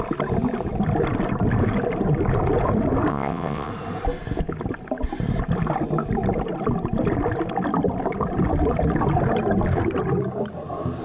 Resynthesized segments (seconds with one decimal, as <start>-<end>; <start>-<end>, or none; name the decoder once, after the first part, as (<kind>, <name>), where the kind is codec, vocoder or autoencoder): 3.1-3.7 (vocoder, WaveNeXt)